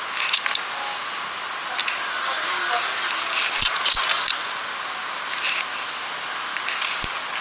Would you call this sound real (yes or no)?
yes